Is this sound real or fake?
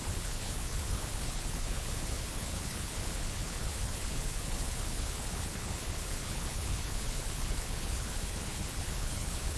fake